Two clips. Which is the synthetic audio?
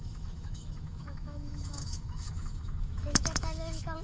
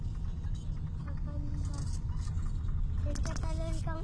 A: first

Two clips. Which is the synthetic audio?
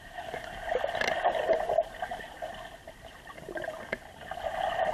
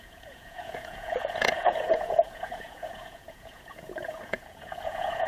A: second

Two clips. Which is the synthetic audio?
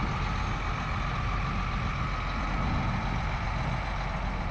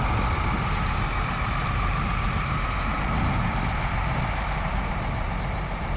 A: second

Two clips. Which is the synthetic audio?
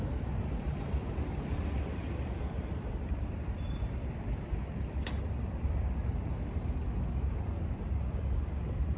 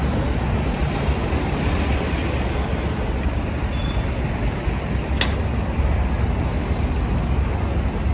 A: first